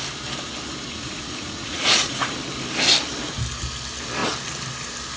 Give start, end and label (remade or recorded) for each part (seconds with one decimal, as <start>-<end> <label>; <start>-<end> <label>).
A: 0.0-0.9 recorded; 0.9-2.3 remade; 2.3-5.2 recorded